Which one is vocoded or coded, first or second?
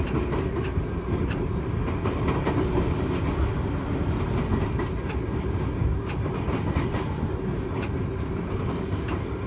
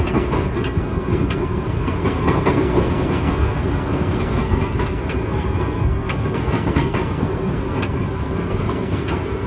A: second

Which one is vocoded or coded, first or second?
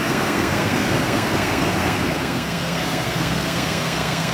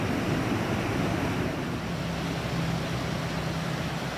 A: first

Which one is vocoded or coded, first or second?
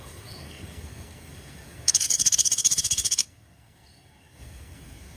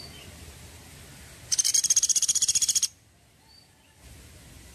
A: first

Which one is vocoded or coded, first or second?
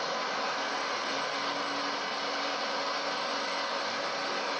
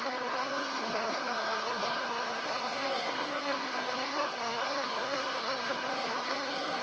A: second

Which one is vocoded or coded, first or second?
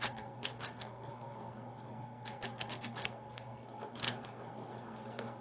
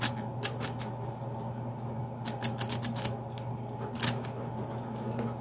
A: first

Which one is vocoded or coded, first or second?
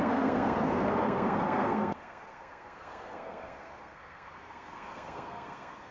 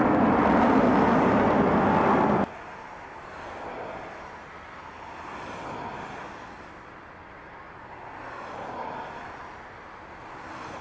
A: first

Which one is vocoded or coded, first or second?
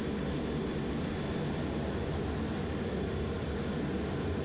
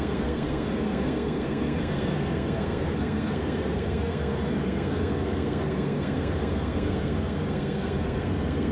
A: second